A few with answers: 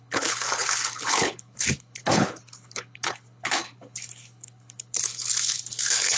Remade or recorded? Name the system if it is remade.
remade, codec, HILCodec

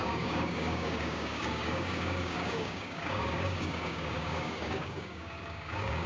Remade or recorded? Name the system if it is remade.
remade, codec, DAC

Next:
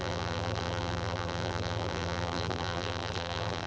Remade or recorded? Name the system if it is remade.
remade, vocoder, BigVGAN v2